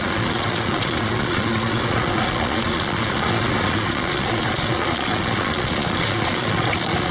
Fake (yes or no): yes